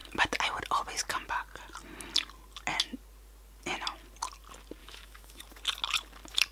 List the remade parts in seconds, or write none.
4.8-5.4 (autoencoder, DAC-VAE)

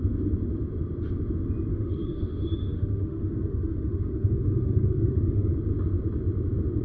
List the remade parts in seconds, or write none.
1.7-5.5 (autoencoder, DAC-VAE)

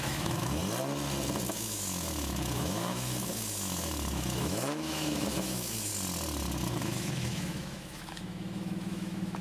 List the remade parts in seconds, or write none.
0.0-0.6 (autoencoder, DAC-VAE); 1.5-5.9; 6.8-9.4

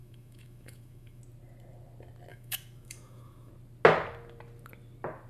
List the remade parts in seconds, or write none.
0.0-1.2 (autoencoder, DAC-VAE); 2.3-3.5

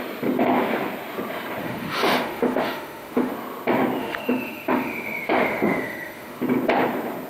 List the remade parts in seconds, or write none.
1.6-3.3 (autoencoder, DAC-VAE); 4.0-6.4